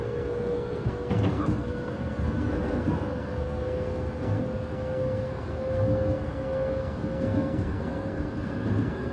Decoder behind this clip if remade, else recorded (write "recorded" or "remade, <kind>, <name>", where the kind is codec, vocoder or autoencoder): remade, codec, SNAC